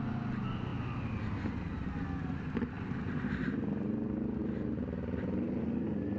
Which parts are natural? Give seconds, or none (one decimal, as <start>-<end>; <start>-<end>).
0.0-6.2